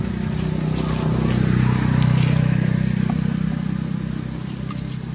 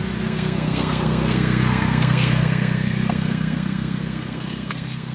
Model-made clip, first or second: second